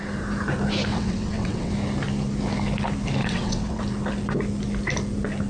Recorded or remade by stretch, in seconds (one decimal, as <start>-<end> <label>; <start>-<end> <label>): 0.0-0.9 recorded; 0.9-1.7 remade; 1.7-3.2 recorded; 3.2-3.8 remade; 3.8-5.5 recorded